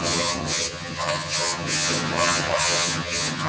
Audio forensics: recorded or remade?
remade